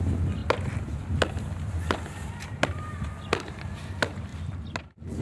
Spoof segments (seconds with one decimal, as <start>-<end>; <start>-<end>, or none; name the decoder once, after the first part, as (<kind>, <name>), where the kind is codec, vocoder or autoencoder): none

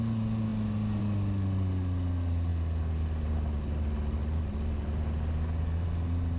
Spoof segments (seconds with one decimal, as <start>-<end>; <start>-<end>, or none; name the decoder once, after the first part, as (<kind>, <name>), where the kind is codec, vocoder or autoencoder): none